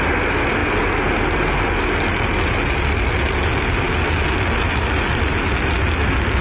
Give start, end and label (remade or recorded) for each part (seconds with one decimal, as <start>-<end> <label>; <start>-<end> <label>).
0.0-6.4 recorded